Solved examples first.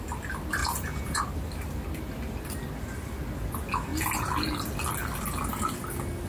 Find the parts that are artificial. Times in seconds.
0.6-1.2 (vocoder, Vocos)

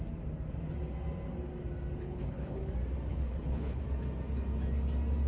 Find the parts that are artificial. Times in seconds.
2.0-2.7 (codec, HILCodec); 3.1-3.8

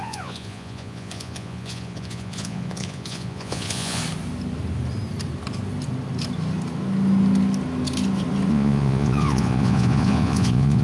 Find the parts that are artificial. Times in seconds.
0.0-4.0 (vocoder, Vocos); 8.5-10.8

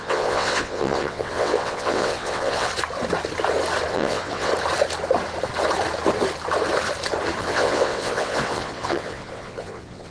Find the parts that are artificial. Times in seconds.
0.0-2.7 (vocoder, WaveNeXt); 3.9-4.5; 7.4-10.1

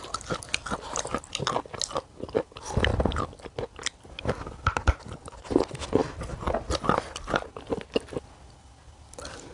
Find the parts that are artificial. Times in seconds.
none

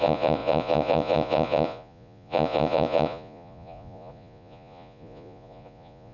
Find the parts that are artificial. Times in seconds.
0.0-6.1 (vocoder, Vocos)

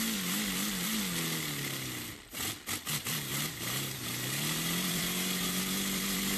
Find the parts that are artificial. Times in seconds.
3.3-6.4 (vocoder, BigVGAN v2)

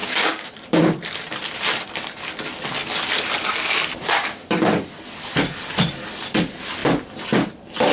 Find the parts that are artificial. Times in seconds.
0.0-0.5 (codec, DAC)